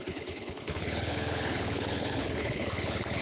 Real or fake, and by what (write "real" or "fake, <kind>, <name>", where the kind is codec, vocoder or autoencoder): fake, codec, HILCodec